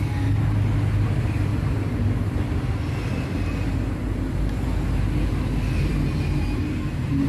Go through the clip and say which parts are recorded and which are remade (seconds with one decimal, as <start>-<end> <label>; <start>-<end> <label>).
0.0-7.3 recorded